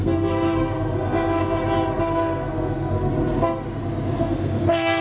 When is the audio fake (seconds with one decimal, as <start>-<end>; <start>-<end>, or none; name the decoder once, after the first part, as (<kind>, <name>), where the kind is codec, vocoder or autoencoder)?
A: 0.0-1.4 (codec, SNAC); 2.0-3.1; 4.2-5.0